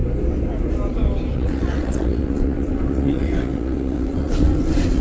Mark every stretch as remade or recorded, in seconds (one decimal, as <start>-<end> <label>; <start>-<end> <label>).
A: 0.0-1.3 recorded; 1.3-5.0 remade